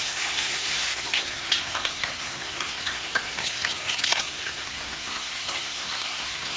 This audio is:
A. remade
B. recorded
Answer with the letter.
A